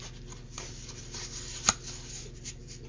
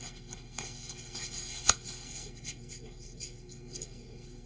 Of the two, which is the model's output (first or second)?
second